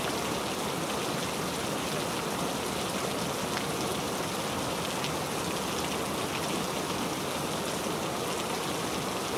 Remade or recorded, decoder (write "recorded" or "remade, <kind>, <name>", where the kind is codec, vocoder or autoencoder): recorded